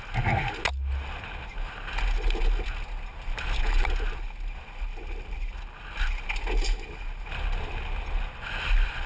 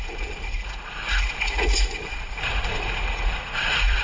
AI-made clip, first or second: second